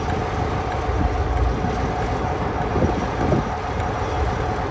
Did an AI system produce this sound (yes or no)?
no